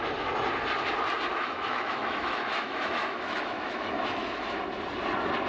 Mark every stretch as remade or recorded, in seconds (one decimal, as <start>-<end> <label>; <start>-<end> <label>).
0.0-1.3 recorded; 1.3-4.6 remade; 4.6-5.5 recorded